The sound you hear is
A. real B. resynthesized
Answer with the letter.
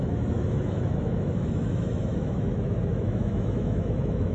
B